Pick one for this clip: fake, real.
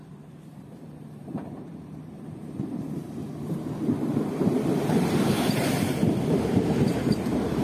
fake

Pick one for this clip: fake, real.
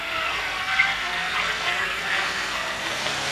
fake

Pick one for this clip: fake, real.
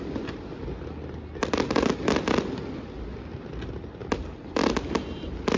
real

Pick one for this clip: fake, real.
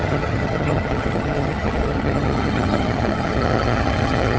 fake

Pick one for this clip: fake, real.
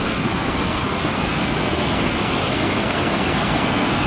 fake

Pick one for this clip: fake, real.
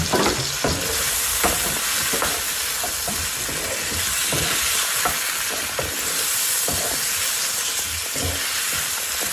real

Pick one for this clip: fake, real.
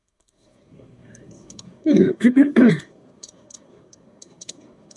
fake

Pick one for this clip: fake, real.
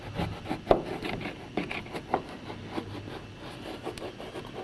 real